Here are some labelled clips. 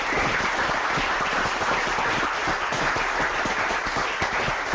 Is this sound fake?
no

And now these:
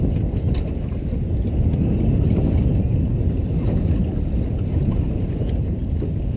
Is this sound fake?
no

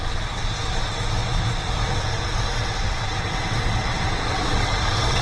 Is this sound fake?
yes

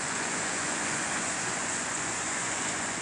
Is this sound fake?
yes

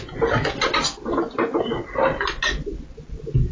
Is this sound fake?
no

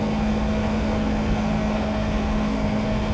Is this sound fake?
yes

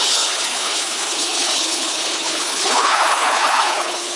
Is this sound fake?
yes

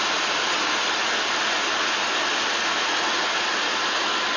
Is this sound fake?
no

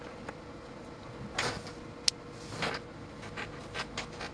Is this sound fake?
no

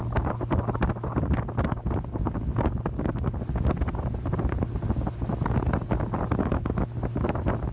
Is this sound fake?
no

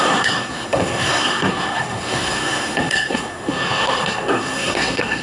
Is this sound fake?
yes